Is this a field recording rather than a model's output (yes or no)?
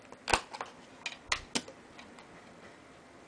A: yes